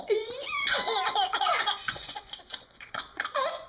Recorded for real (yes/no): no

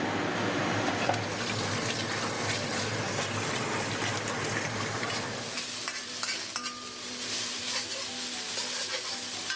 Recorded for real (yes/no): yes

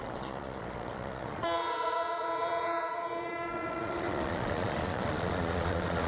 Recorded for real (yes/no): no